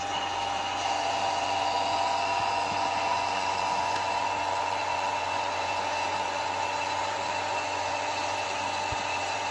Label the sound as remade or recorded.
remade